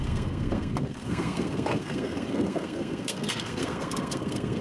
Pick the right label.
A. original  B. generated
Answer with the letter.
B